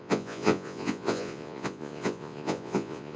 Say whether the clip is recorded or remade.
remade